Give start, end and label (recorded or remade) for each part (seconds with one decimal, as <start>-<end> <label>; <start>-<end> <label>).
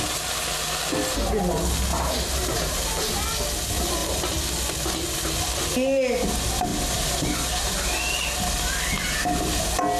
0.0-1.9 recorded; 1.9-3.1 remade; 3.1-10.0 recorded